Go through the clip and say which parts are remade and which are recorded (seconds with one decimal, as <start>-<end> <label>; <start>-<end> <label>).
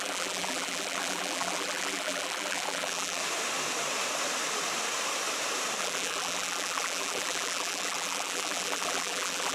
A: 0.0-3.2 remade; 3.2-5.8 recorded; 5.8-9.5 remade